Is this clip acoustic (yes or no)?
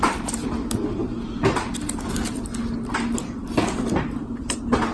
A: yes